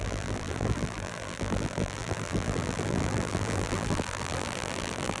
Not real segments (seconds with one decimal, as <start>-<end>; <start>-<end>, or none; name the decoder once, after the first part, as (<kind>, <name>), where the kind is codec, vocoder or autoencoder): 0.0-5.2 (vocoder, BigVGAN v2)